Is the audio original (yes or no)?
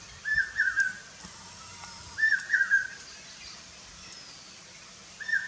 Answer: yes